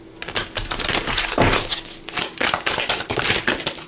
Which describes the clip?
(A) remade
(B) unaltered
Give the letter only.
B